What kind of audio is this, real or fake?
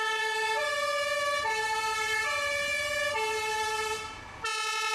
real